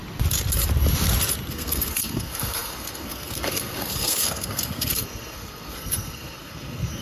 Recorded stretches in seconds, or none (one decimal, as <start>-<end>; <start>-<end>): 0.0-1.5